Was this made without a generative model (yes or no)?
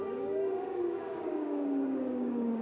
no